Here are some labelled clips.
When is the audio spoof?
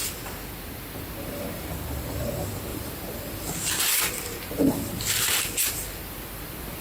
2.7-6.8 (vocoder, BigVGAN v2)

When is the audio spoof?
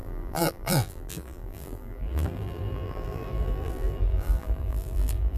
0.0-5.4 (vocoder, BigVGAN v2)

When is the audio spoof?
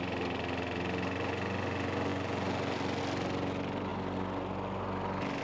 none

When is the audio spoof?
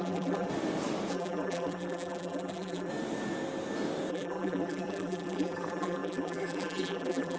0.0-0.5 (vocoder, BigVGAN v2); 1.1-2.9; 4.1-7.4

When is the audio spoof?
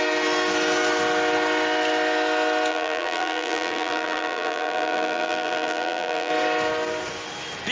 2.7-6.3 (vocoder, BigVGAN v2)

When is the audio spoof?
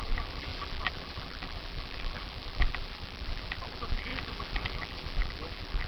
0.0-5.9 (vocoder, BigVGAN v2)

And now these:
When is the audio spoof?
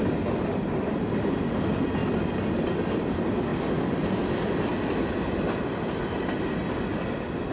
0.0-2.0 (vocoder, BigVGAN v2); 2.9-3.5; 4.2-4.7; 6.9-7.5